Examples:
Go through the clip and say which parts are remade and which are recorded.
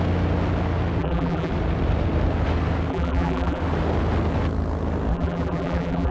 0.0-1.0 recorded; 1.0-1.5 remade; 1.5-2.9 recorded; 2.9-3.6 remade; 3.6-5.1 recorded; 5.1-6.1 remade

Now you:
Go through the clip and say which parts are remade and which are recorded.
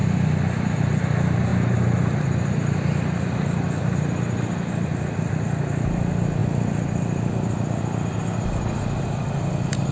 0.0-9.9 recorded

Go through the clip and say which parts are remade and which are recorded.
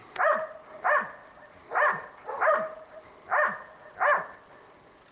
0.0-1.2 recorded; 1.2-3.0 remade; 3.0-5.1 recorded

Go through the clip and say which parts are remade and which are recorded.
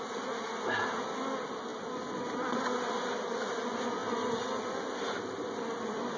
0.0-4.0 recorded; 4.0-4.6 remade; 4.6-6.2 recorded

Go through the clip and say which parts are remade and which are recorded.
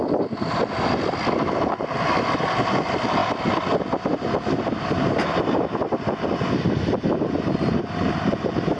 0.0-8.8 recorded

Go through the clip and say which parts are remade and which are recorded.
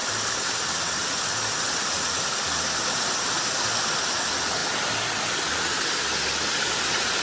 0.0-3.1 remade; 3.1-7.2 recorded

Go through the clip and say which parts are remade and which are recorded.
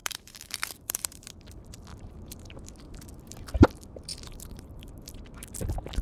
0.0-1.3 remade; 1.3-1.9 recorded; 1.9-2.5 remade; 2.5-4.1 recorded; 4.1-5.2 remade; 5.2-6.0 recorded